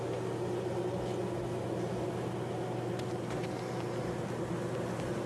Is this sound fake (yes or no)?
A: no